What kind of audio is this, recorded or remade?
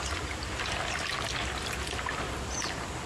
recorded